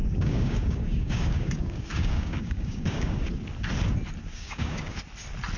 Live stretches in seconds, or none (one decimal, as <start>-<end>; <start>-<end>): 3.3-4.3; 5.0-5.6